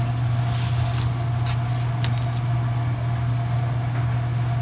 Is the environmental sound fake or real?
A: real